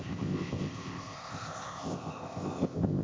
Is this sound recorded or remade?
remade